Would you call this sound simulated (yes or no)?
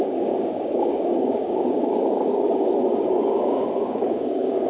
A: yes